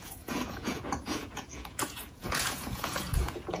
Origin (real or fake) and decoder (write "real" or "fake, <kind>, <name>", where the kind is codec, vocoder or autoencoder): fake, vocoder, Vocos